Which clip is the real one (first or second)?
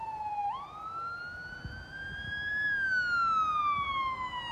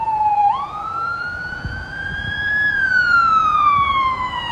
first